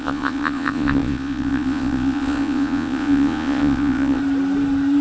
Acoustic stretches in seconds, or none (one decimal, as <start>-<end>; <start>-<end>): 4.2-5.0

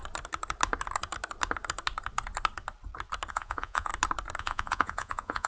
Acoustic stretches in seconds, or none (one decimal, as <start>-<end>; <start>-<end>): 0.0-3.3; 3.9-4.4

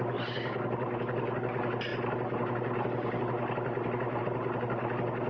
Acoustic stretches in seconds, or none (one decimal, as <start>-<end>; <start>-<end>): 0.0-5.3

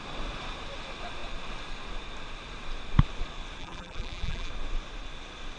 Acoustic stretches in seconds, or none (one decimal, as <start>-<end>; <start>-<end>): 0.0-3.6; 4.5-5.6

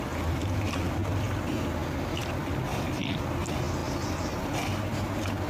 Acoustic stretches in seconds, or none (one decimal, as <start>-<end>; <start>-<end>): 0.0-5.5